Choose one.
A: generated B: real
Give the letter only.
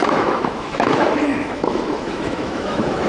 A